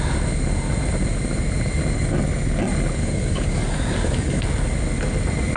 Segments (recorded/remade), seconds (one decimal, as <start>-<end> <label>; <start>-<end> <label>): 0.0-3.0 recorded; 3.0-4.4 remade; 4.4-5.6 recorded